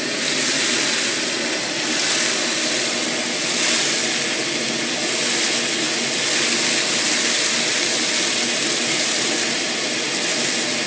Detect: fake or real real